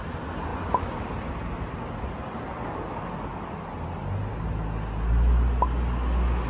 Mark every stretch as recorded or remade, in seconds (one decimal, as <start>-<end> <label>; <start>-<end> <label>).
0.0-6.5 recorded